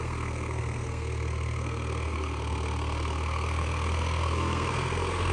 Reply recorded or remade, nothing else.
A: remade